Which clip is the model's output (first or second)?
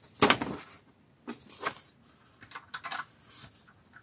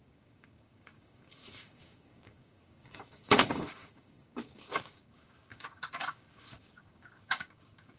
second